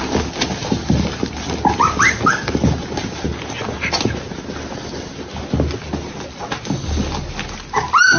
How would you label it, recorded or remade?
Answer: recorded